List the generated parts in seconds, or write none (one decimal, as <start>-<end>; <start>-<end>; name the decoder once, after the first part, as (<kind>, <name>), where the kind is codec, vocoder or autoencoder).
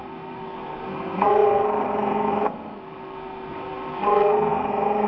0.0-5.1 (codec, SNAC)